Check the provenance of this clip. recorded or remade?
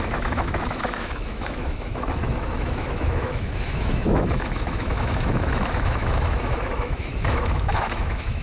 remade